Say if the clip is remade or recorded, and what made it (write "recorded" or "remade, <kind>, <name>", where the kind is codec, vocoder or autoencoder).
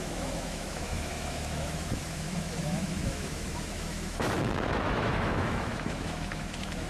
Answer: remade, autoencoder, DAC-VAE